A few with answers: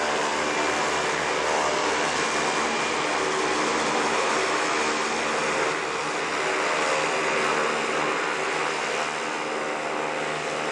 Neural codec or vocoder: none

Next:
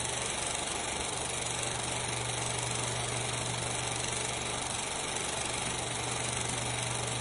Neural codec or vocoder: none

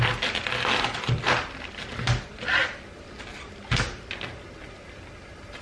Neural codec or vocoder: none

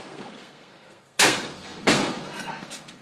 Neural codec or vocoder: codec, SNAC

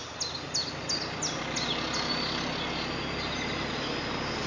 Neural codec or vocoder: none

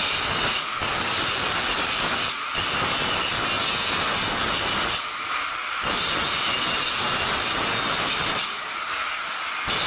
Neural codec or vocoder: none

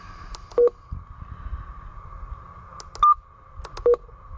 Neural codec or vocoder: none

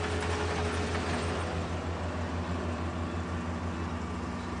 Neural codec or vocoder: none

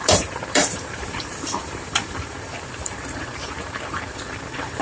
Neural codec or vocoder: vocoder, BigVGAN v2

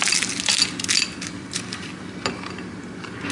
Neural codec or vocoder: none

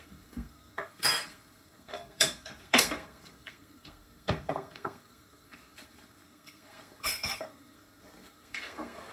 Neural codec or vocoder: codec, SNAC